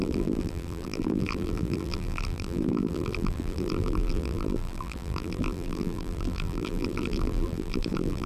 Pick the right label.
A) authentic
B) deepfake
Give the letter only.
B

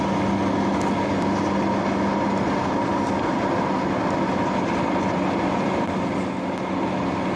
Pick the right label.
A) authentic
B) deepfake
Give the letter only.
A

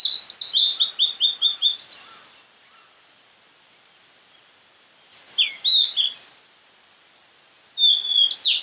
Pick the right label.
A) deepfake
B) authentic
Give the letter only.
B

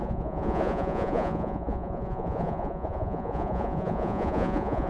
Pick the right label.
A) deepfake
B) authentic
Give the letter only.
A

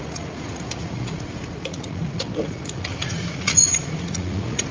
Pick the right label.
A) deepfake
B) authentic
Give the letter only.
A